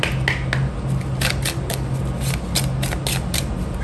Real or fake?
real